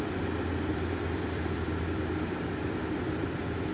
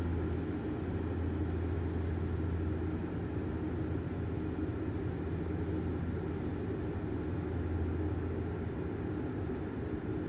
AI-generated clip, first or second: first